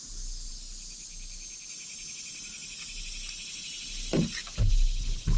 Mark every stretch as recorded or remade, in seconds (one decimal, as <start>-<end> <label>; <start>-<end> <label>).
0.0-5.4 recorded